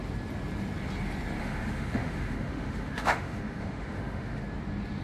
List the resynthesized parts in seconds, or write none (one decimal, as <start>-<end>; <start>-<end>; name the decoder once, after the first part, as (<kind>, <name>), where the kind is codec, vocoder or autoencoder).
1.4-4.4 (autoencoder, DAC-VAE)